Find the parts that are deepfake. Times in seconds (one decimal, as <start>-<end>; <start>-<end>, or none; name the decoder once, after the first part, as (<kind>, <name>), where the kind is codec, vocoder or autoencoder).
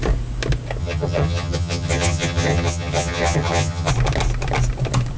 0.8-3.9 (vocoder, HiFi-GAN)